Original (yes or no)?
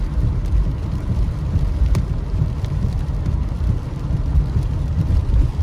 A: no